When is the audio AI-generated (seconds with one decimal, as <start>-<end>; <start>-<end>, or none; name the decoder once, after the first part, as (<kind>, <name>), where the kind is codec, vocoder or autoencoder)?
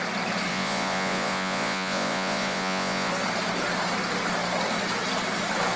0.5-3.1 (vocoder, Vocos)